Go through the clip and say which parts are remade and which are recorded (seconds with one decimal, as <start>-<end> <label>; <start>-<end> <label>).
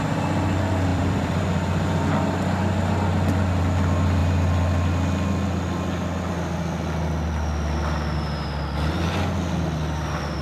0.0-0.9 recorded; 0.9-2.1 remade; 2.1-10.4 recorded